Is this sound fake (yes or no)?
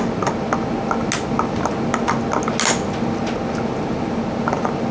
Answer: no